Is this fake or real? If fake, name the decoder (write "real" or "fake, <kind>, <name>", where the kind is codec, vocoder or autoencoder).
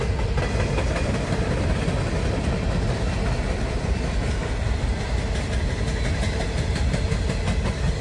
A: real